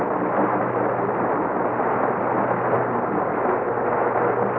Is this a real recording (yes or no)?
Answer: yes